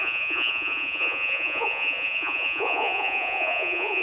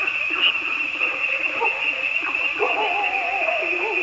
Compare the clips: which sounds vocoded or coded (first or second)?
first